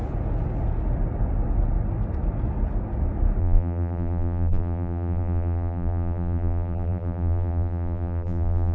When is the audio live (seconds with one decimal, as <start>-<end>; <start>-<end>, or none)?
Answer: 0.0-3.4